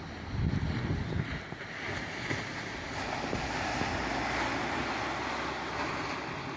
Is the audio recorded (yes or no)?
yes